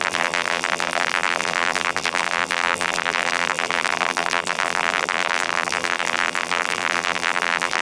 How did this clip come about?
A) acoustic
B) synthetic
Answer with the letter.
B